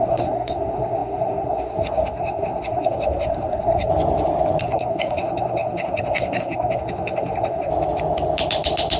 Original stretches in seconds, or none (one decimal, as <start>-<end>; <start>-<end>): 3.9-4.6; 7.7-9.0